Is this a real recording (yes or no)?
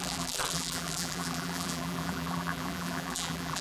no